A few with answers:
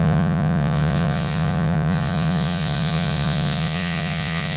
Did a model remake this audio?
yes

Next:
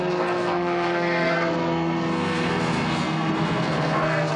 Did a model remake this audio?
yes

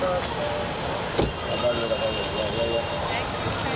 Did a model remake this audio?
no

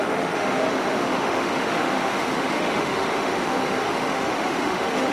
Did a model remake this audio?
yes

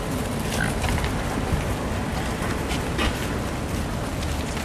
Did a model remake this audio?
no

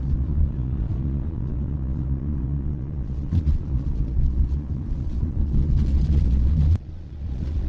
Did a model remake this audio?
yes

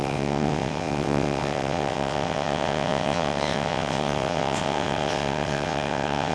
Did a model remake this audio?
yes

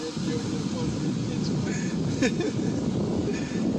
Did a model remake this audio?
no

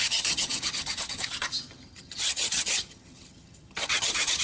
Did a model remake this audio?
yes